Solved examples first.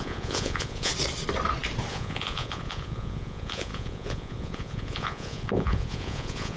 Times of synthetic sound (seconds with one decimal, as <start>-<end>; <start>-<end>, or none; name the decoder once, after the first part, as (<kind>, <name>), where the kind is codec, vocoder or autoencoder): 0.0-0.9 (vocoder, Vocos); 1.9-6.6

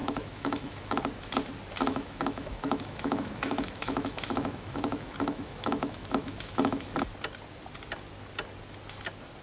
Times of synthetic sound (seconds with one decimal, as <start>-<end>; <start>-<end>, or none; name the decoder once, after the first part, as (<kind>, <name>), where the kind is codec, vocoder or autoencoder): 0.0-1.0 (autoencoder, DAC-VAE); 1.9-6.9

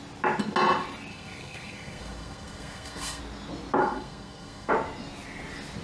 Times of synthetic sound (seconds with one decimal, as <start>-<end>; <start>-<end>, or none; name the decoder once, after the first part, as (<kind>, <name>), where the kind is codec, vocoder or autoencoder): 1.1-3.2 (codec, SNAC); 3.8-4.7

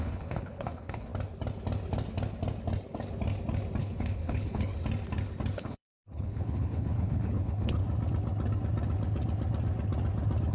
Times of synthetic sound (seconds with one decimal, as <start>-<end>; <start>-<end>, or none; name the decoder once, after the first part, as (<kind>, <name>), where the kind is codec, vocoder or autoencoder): 0.0-1.1 (codec, HILCodec); 3.8-4.7; 5.6-7.8

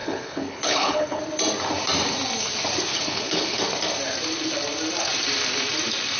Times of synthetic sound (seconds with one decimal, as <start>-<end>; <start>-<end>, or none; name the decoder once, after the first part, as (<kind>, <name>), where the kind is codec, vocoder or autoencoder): 0.0-1.2 (codec, HILCodec); 2.9-3.6

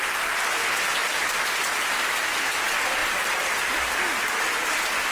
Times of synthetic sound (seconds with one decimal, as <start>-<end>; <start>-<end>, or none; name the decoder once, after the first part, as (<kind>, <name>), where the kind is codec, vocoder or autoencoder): 0.9-2.6 (vocoder, BigVGAN v2); 3.0-3.6

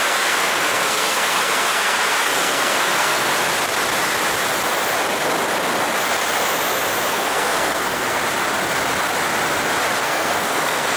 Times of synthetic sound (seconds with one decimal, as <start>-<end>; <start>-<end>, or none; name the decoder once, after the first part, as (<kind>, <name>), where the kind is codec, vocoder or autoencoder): 0.0-3.3 (codec, SNAC); 7.1-8.2; 10.0-11.0